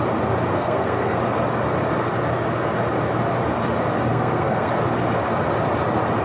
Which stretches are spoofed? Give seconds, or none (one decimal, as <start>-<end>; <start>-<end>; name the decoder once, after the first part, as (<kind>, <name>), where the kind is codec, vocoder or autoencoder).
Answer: 0.5-1.2 (codec, SNAC); 4.1-4.7